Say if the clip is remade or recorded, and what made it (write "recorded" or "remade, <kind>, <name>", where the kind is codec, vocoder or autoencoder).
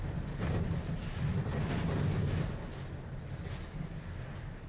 recorded